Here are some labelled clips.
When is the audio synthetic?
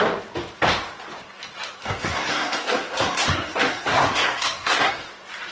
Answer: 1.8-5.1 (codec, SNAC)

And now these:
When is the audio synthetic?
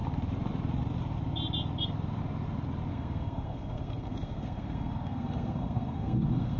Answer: 2.9-6.6 (codec, SNAC)